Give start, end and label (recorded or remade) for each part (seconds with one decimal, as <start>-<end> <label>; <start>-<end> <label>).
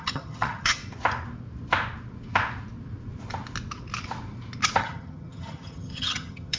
0.0-0.8 remade; 0.8-4.8 recorded; 4.8-6.6 remade